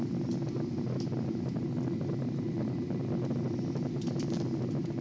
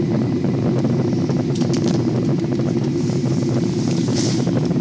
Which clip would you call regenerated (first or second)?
second